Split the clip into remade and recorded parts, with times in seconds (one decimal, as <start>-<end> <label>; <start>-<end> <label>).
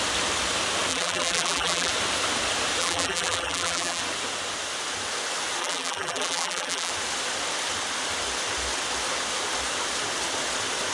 0.0-0.9 recorded; 0.9-1.9 remade; 1.9-2.8 recorded; 2.8-4.0 remade; 4.0-5.6 recorded; 5.6-6.9 remade; 6.9-10.9 recorded